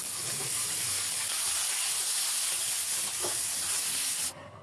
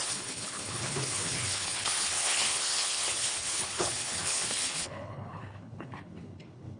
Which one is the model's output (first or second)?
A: second